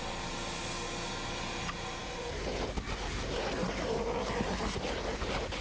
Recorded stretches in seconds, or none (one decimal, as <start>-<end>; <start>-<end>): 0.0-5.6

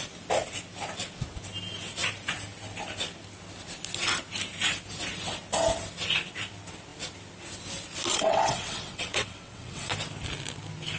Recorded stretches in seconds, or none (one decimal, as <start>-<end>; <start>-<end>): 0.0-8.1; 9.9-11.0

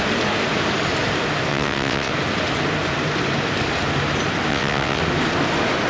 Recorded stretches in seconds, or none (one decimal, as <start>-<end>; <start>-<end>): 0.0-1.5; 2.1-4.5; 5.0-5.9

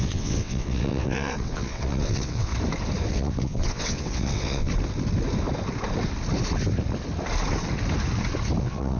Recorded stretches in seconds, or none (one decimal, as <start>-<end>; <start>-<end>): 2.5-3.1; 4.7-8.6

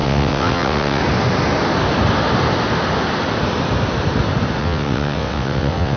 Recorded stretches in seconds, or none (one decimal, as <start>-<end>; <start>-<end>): 1.0-4.6

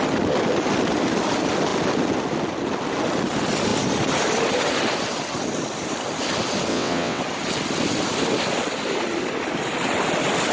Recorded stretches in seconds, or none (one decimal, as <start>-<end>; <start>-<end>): 0.0-6.7; 7.2-10.5

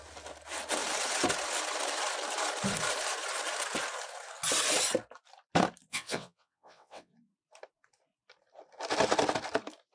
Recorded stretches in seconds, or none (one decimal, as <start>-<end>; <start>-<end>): 0.0-5.9; 7.1-9.9

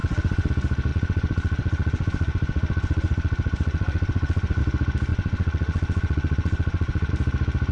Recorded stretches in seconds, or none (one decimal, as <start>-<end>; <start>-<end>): 0.5-0.9; 4.6-5.1; 7.1-7.7